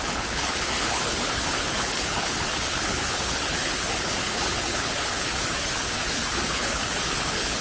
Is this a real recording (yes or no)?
no